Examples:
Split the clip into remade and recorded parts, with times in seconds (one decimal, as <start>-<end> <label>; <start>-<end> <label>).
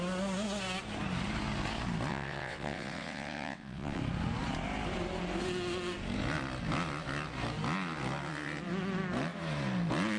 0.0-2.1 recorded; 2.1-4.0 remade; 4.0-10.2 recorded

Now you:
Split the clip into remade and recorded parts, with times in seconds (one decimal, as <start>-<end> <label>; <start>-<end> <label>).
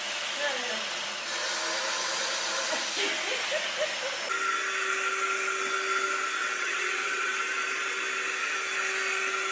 0.0-6.4 recorded; 6.4-7.3 remade; 7.3-9.5 recorded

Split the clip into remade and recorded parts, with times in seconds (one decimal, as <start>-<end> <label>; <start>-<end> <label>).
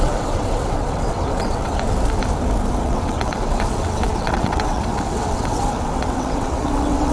0.0-1.7 remade; 1.7-2.8 recorded; 2.8-7.1 remade